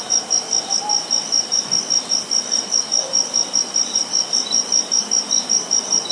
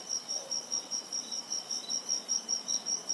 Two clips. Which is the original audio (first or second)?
first